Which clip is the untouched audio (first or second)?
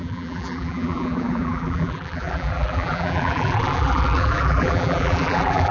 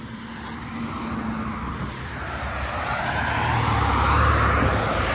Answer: second